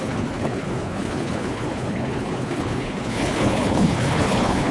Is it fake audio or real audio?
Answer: fake